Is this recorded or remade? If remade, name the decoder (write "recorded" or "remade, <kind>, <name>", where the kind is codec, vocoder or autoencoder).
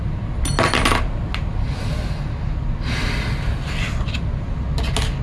recorded